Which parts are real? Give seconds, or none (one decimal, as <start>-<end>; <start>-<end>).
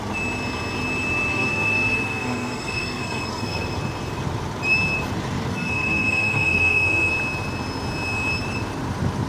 0.0-1.3; 3.8-5.5; 7.1-9.3